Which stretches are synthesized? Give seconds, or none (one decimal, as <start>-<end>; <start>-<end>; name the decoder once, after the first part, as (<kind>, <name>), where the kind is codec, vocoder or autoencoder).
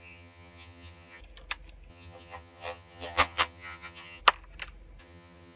0.0-1.2 (vocoder, HiFi-GAN); 1.9-4.2; 5.0-5.6